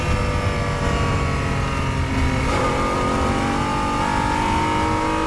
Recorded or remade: recorded